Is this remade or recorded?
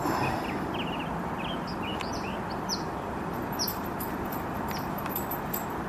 remade